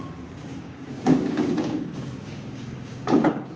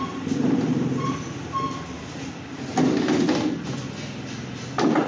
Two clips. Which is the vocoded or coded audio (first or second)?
first